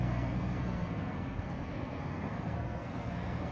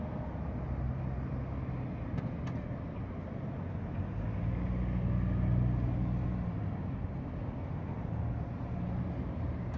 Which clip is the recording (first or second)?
second